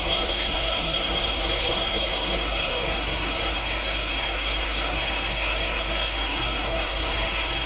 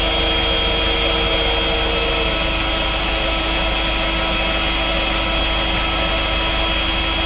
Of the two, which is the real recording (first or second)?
second